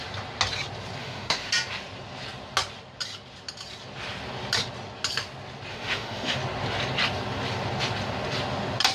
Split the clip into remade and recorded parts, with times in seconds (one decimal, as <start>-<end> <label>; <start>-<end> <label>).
0.0-1.0 recorded; 1.0-1.5 remade; 1.5-5.7 recorded; 5.7-6.4 remade; 6.4-8.9 recorded

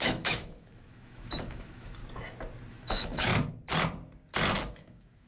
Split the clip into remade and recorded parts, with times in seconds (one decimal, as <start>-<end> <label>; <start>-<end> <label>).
0.0-2.0 remade; 2.0-2.7 recorded; 2.7-3.3 remade; 3.3-4.7 recorded; 4.7-5.3 remade